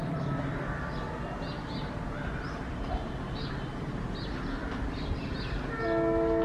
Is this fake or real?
real